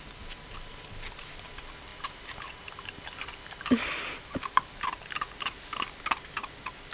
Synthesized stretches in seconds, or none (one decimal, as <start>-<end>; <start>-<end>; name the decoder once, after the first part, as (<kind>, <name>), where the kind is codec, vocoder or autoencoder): none